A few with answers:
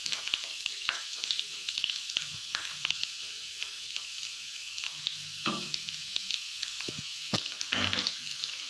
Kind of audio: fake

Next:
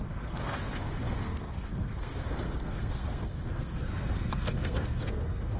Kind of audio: fake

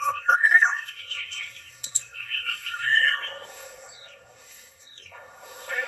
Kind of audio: fake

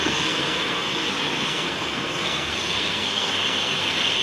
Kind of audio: fake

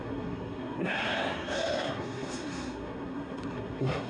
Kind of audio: fake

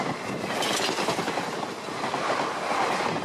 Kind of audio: real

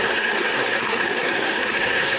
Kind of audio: fake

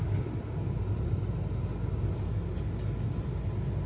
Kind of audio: real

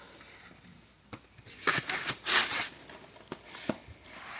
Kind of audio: real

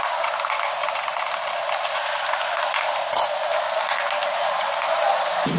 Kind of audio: real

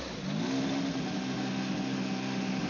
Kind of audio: real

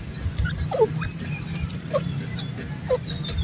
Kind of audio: real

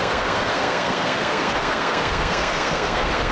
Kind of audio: fake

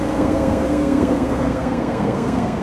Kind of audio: fake